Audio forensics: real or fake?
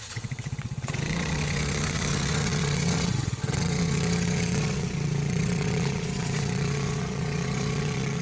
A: fake